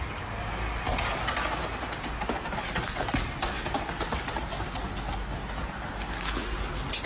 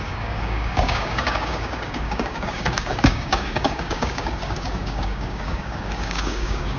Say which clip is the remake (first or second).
second